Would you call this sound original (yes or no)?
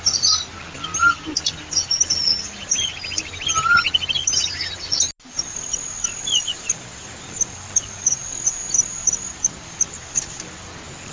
yes